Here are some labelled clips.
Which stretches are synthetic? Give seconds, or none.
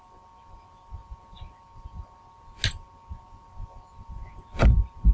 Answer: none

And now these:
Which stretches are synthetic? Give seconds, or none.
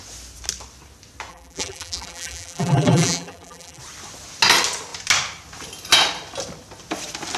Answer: 1.3-3.8